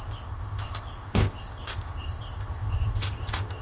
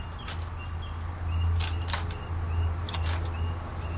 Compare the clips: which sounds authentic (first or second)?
second